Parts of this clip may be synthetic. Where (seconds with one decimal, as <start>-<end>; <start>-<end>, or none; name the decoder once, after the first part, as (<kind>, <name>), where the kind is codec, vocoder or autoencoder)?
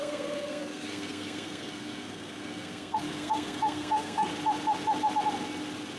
0.0-4.3 (codec, SNAC)